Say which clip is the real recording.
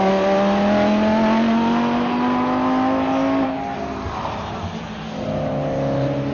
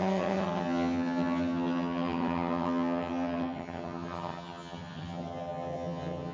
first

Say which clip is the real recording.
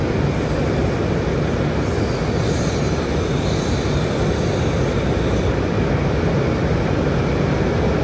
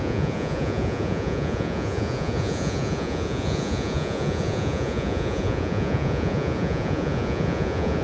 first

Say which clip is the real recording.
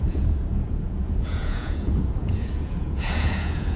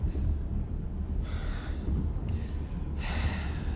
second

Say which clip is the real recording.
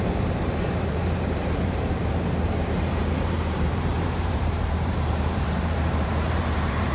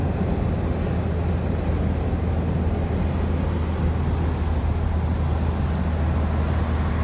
second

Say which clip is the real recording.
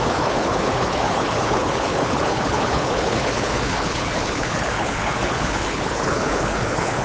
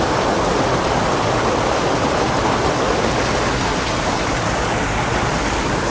second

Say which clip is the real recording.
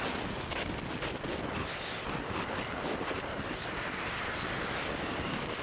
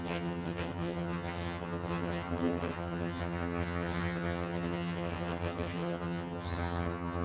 first